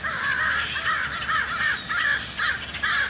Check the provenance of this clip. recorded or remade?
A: recorded